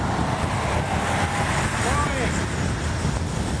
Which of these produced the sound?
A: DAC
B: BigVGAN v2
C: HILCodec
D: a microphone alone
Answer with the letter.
D